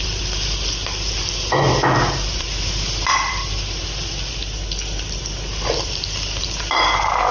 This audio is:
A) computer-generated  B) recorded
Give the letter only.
A